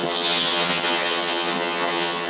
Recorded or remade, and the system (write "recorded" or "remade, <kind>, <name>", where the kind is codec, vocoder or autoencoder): remade, vocoder, HiFi-GAN